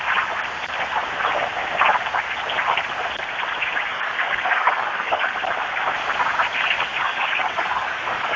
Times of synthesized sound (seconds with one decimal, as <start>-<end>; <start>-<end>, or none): 3.9-5.3; 6.9-8.4